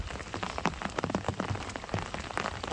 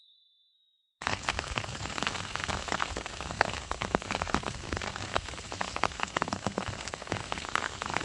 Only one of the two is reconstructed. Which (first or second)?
second